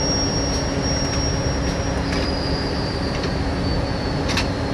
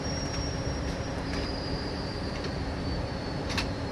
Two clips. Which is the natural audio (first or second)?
first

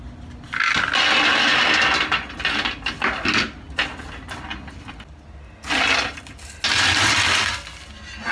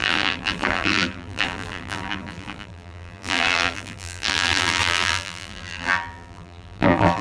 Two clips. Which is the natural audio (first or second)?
first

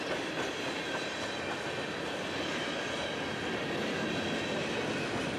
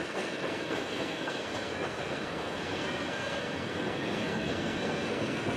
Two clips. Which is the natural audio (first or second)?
first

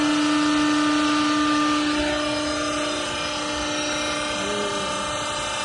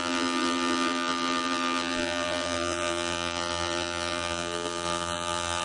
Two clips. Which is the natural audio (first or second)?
first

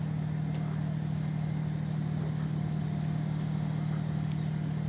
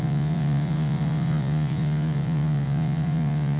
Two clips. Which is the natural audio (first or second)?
first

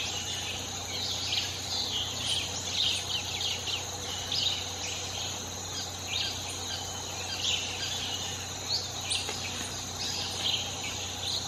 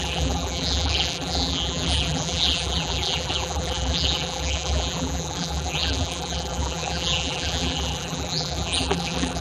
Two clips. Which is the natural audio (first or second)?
first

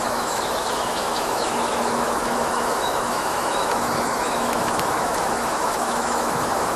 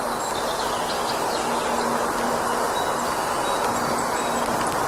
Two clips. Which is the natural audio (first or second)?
second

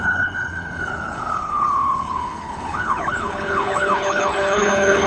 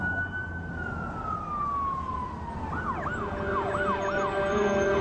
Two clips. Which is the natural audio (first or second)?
second